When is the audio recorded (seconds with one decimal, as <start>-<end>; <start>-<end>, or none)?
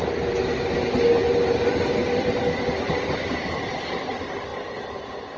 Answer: 0.0-4.5